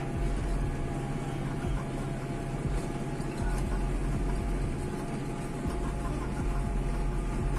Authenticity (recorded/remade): recorded